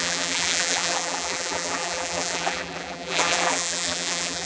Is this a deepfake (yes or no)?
yes